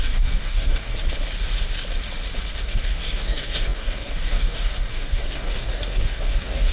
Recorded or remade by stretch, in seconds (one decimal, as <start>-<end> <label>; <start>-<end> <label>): 0.0-0.9 remade; 0.9-2.5 recorded; 2.5-6.7 remade